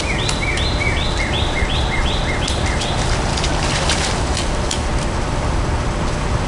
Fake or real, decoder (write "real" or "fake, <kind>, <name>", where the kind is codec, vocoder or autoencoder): real